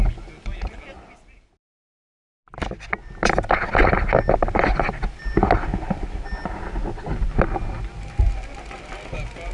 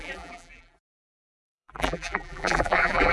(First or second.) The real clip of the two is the first